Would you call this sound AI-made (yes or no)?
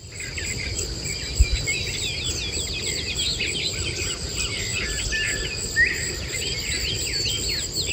no